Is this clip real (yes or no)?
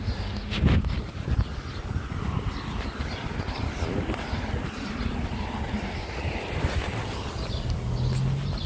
yes